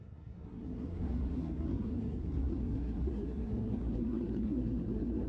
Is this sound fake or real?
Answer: fake